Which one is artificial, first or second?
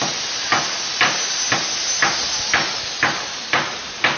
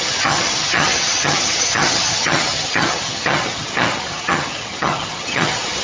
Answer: second